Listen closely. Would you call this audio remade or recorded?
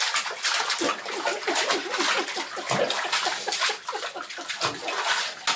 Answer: recorded